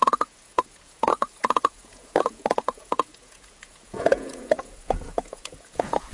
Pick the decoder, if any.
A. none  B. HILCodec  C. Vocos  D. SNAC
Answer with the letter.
C